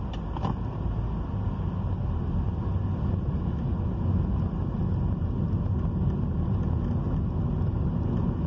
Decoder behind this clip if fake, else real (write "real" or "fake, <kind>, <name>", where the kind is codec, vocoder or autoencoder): real